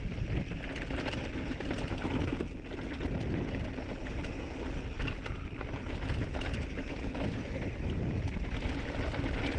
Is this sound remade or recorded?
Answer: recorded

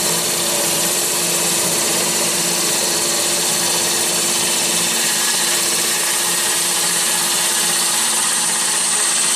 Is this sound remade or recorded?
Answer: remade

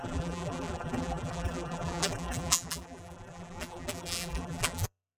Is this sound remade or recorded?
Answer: remade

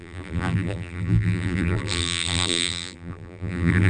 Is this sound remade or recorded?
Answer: remade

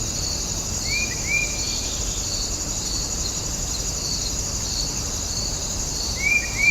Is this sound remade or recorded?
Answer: remade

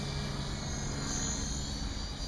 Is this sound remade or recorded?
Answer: recorded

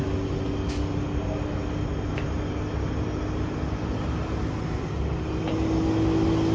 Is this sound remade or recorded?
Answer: recorded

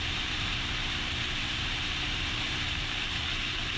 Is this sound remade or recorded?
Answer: remade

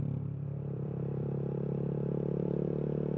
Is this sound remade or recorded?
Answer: remade